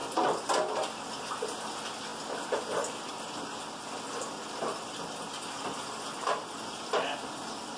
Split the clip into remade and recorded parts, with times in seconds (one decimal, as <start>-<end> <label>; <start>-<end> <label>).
0.0-7.8 recorded